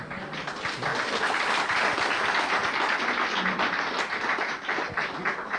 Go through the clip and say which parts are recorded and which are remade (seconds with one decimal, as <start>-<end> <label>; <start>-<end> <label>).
0.0-5.6 recorded